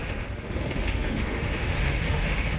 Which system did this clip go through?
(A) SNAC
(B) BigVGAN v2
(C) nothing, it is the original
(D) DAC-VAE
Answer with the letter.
D